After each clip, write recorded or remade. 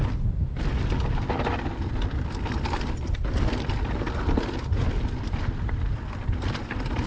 recorded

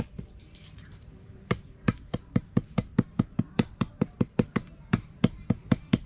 remade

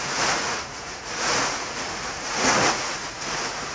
remade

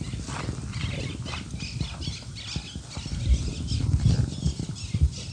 recorded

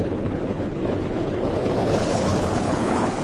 remade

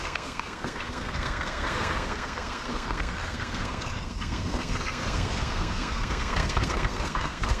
remade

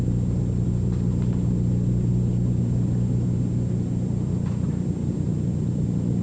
recorded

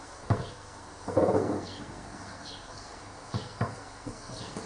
remade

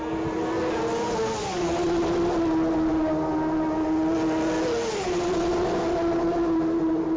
recorded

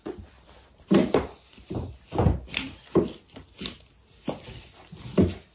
recorded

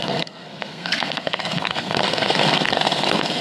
remade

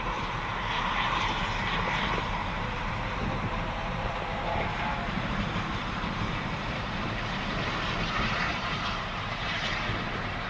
remade